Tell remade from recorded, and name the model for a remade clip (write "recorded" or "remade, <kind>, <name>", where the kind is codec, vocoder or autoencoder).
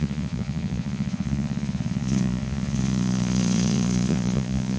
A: remade, vocoder, Vocos